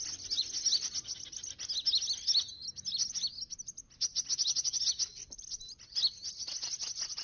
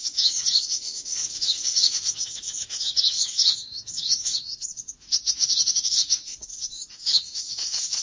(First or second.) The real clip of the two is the first